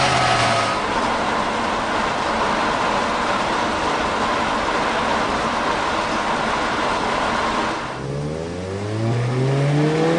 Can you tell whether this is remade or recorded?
recorded